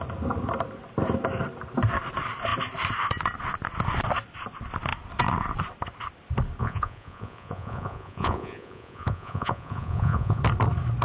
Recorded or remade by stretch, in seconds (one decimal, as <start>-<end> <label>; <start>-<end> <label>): 0.0-6.6 recorded; 6.6-10.4 remade; 10.4-11.0 recorded